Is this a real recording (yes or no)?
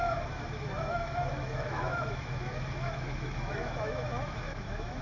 no